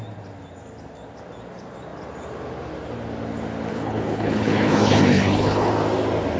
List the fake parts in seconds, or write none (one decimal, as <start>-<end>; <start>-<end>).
3.7-5.7